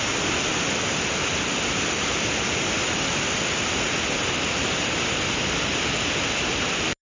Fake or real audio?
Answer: real